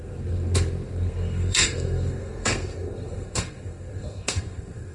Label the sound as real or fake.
fake